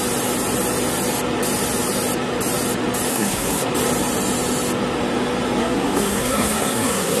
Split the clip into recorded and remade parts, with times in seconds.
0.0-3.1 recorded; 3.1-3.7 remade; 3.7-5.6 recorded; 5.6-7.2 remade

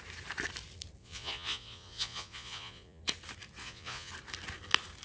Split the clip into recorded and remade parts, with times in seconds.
0.0-1.0 recorded; 1.0-3.0 remade; 3.0-3.6 recorded; 3.6-4.1 remade; 4.1-5.0 recorded

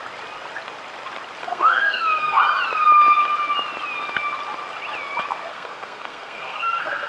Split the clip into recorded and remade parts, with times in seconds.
0.0-1.4 recorded; 1.4-2.4 remade; 2.4-5.5 recorded; 5.5-7.1 remade

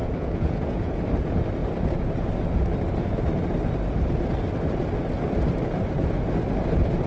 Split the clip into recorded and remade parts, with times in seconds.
0.0-1.0 remade; 1.0-7.1 recorded

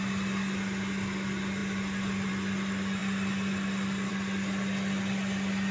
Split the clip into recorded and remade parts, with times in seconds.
0.0-5.7 recorded